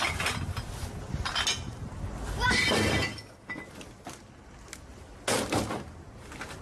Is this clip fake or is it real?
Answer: real